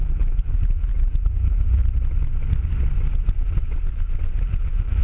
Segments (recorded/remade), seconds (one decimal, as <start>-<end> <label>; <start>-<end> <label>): 0.0-1.8 remade; 1.8-4.4 recorded; 4.4-5.0 remade